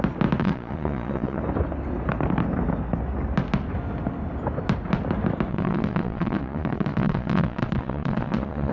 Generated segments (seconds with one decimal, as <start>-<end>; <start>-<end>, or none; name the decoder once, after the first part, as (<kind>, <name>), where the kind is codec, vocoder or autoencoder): 0.4-1.4 (vocoder, Vocos); 5.5-8.7